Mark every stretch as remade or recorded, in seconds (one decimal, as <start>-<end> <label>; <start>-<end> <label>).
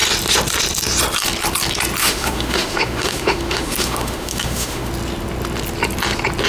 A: 0.0-2.0 recorded; 2.0-4.9 remade; 4.9-6.5 recorded